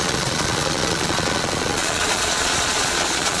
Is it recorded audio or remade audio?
remade